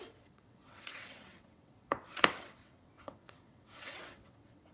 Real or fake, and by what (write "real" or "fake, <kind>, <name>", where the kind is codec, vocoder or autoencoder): fake, vocoder, WaveNeXt